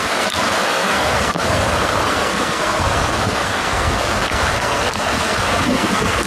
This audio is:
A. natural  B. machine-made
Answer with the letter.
B